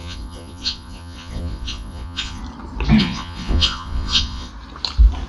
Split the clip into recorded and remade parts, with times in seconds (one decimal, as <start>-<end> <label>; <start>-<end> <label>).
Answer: 0.0-2.4 remade; 2.4-3.0 recorded; 3.0-4.5 remade; 4.5-5.3 recorded